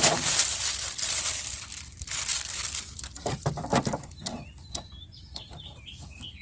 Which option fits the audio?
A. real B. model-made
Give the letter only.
A